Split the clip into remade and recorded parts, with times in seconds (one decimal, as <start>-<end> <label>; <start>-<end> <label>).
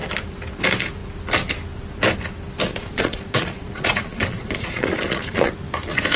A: 0.0-2.7 recorded; 2.7-5.5 remade; 5.5-6.2 recorded